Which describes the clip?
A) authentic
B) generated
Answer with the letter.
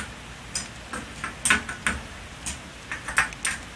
A